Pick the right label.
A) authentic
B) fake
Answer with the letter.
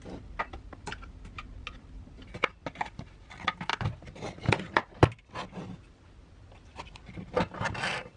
A